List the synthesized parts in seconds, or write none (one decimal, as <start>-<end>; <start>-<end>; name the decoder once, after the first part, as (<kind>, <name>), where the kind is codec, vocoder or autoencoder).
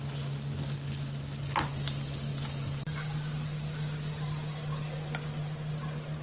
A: none